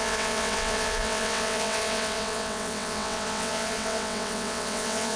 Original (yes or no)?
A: no